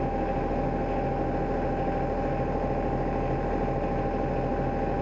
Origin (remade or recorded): recorded